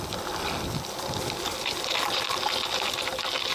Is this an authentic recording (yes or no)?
yes